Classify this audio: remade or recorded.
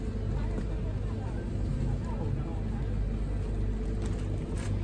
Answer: recorded